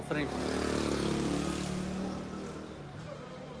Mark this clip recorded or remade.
recorded